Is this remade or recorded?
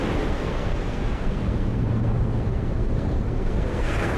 remade